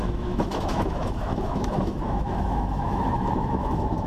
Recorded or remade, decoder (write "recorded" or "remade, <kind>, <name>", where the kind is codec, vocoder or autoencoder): remade, autoencoder, DAC-VAE